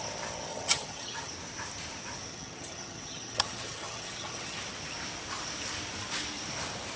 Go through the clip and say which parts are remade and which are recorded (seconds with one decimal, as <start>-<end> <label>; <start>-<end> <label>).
0.0-0.5 recorded; 0.5-1.3 remade; 1.3-2.3 recorded; 2.3-4.6 remade; 4.6-7.0 recorded

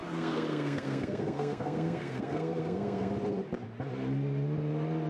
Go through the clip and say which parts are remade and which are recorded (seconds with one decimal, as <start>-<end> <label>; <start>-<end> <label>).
0.0-3.1 remade; 3.1-5.1 recorded

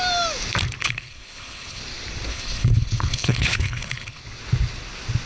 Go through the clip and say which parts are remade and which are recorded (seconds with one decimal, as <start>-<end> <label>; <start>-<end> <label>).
0.0-0.8 recorded; 0.8-1.8 remade; 1.8-2.3 recorded; 2.3-4.2 remade; 4.2-5.3 recorded

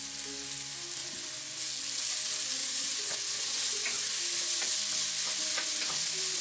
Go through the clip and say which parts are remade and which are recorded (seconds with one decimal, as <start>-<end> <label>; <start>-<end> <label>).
0.0-1.0 recorded; 1.0-1.6 remade; 1.6-2.6 recorded; 2.6-4.2 remade; 4.2-5.5 recorded; 5.5-6.4 remade

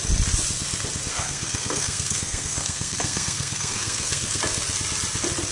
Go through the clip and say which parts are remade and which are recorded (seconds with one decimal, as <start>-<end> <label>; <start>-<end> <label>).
0.0-1.1 recorded; 1.1-4.4 remade; 4.4-5.5 recorded

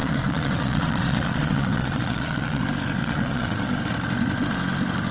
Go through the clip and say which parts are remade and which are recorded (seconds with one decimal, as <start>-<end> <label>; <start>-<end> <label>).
0.0-2.6 remade; 2.6-3.0 recorded; 3.0-3.7 remade; 3.7-5.1 recorded

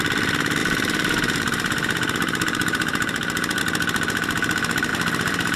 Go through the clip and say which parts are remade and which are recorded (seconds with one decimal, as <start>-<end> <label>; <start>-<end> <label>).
0.0-0.6 recorded; 0.6-3.6 remade; 3.6-4.9 recorded; 4.9-5.6 remade

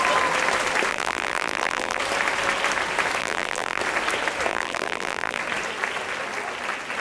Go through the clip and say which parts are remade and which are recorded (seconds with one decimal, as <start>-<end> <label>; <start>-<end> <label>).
0.0-0.9 recorded; 0.9-2.0 remade; 2.0-3.2 recorded; 3.2-3.8 remade; 3.8-4.5 recorded; 4.5-5.4 remade; 5.4-7.0 recorded